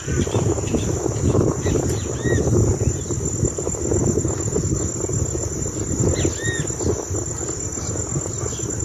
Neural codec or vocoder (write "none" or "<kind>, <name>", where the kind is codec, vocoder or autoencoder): none